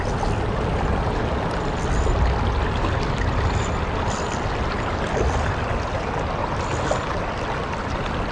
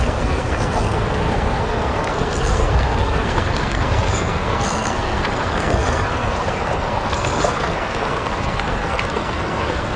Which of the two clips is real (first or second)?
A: first